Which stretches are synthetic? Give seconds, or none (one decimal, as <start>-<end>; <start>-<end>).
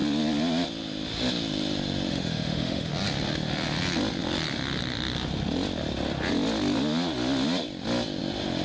2.1-2.9